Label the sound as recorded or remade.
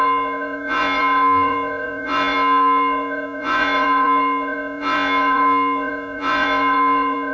remade